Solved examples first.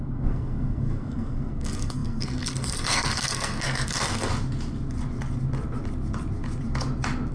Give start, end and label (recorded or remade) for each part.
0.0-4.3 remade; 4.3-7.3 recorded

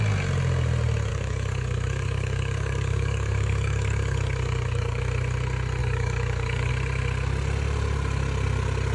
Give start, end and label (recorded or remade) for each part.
0.0-1.1 recorded; 1.1-5.0 remade; 5.0-5.8 recorded; 5.8-6.7 remade; 6.7-8.9 recorded